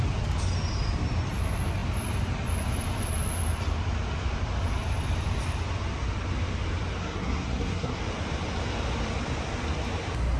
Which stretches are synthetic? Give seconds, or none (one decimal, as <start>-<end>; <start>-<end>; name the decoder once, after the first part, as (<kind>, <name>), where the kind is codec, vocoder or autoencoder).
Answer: 7.0-8.0 (codec, SNAC)